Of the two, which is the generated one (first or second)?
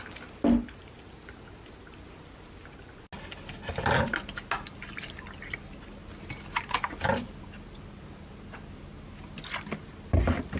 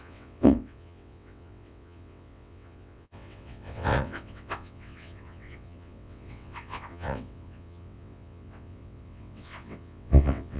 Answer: second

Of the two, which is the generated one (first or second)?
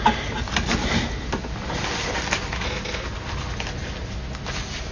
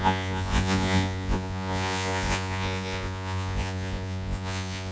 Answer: second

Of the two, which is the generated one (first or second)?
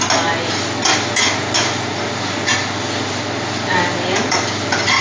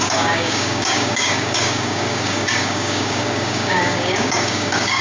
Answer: second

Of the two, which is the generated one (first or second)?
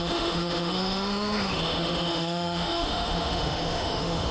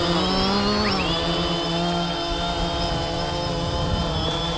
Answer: first